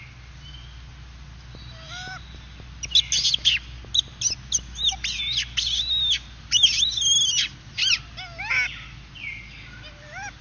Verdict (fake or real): real